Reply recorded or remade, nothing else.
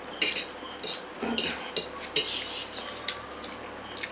recorded